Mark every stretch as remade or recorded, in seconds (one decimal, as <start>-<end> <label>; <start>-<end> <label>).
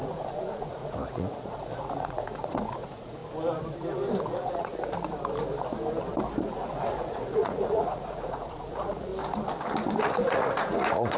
0.0-3.2 remade; 3.2-4.2 recorded; 4.2-4.7 remade; 4.7-6.4 recorded; 6.4-9.1 remade; 9.1-10.0 recorded; 10.0-11.2 remade